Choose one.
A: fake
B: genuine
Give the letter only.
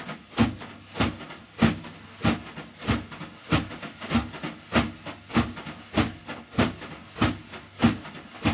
B